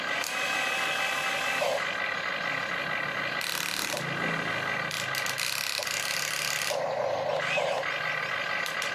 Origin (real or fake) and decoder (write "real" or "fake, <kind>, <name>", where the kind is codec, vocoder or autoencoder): real